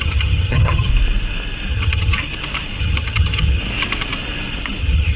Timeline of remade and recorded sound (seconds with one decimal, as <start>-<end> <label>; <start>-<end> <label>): 0.0-0.9 remade; 0.9-1.7 recorded; 1.7-2.2 remade; 2.2-2.8 recorded; 2.8-3.6 remade; 3.6-4.8 recorded; 4.8-5.2 remade

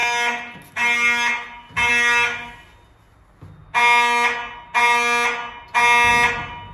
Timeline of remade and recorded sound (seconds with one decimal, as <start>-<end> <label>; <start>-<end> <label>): 0.0-6.7 recorded

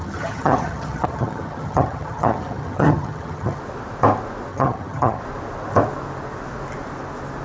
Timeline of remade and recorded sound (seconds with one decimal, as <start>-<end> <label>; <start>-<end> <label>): 0.0-3.6 remade; 3.6-4.5 recorded; 4.5-5.2 remade; 5.2-7.4 recorded

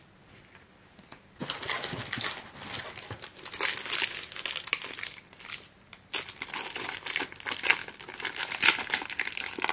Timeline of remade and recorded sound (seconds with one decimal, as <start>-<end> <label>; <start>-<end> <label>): 0.0-9.7 recorded

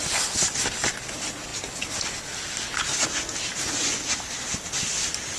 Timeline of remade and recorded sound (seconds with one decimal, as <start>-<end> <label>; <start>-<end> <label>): 0.0-5.4 recorded

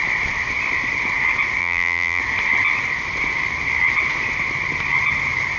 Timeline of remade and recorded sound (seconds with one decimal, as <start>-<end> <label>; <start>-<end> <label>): 0.0-1.6 recorded; 1.6-2.2 remade; 2.2-5.6 recorded

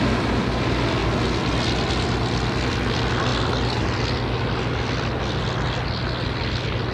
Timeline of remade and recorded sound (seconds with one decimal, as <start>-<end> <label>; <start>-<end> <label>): 0.0-6.9 recorded

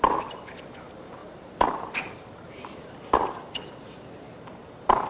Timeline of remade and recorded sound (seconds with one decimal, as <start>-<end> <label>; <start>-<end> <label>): 0.0-5.1 recorded